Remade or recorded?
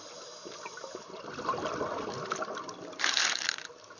recorded